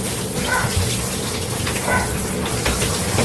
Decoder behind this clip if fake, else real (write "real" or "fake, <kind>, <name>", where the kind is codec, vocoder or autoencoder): real